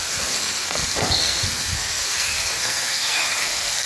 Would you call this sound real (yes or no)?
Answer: no